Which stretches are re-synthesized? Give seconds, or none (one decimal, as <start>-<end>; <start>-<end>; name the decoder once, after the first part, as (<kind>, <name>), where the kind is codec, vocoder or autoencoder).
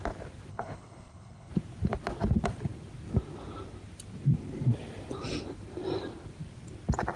0.5-1.5 (codec, HILCodec)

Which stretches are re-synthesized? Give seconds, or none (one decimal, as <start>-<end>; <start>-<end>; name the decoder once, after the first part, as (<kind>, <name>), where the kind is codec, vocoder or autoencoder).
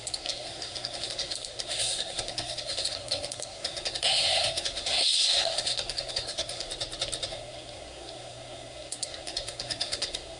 0.0-6.7 (codec, SNAC); 7.3-10.4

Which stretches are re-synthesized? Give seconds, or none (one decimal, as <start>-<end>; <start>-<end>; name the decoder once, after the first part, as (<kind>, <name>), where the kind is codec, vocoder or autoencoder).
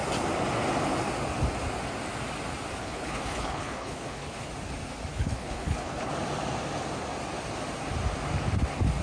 2.8-4.5 (codec, HILCodec); 5.1-6.1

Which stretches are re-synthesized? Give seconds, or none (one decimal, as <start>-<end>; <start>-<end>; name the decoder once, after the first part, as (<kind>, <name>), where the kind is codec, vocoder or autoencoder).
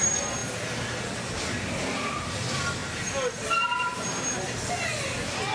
none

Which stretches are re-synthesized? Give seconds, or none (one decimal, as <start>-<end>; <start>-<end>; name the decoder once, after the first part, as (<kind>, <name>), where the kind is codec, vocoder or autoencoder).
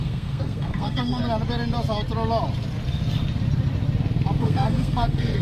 0.0-1.2 (codec, SNAC); 4.4-5.4